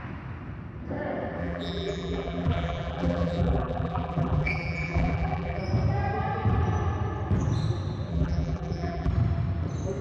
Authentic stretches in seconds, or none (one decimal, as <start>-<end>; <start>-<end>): 0.0-1.4; 5.6-8.1; 9.1-10.0